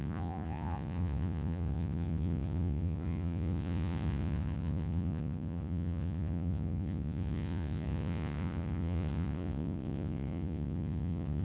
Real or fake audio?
fake